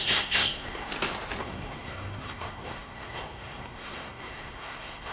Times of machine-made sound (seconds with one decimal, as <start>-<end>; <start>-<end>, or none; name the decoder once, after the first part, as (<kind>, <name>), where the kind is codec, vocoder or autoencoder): 0.0-0.9 (codec, SNAC); 1.4-5.1